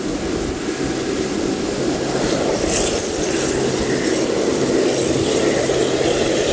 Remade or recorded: recorded